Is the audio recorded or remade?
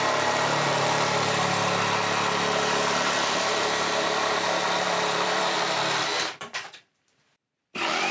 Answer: remade